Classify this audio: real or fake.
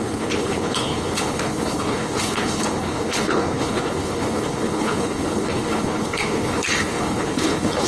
fake